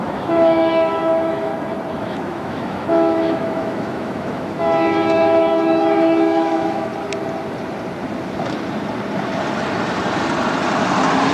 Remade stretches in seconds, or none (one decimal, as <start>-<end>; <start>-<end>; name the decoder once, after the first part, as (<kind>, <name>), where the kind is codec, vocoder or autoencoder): 0.0-1.5 (autoencoder, DAC-VAE); 2.0-6.9